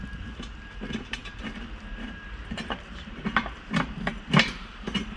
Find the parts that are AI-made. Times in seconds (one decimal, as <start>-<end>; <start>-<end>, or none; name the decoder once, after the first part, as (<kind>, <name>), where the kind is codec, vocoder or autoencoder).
0.0-5.2 (vocoder, BigVGAN v2)